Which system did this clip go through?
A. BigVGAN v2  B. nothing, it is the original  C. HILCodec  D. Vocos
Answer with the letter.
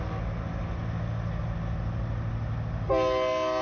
B